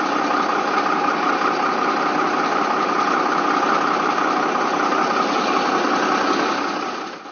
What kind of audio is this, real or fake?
real